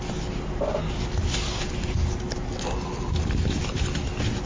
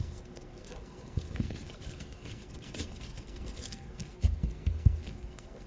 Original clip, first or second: first